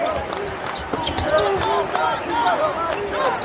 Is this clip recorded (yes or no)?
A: yes